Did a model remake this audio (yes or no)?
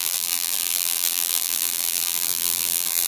yes